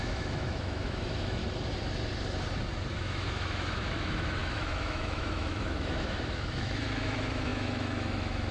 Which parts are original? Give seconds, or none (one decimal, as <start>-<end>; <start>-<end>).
1.4-2.9